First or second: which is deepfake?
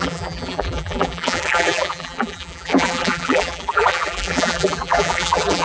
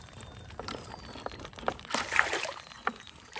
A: first